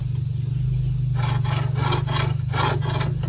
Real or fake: real